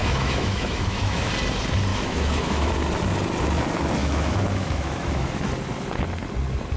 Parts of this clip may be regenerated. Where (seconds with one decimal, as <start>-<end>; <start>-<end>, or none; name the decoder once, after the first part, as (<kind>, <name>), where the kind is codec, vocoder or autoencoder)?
0.0-1.3 (autoencoder, DAC-VAE); 1.9-2.7; 4.0-5.5